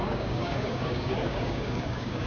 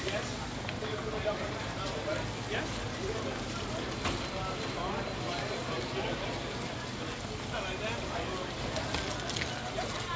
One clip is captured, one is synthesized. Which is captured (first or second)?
second